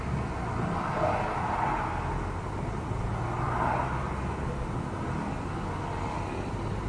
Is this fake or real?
real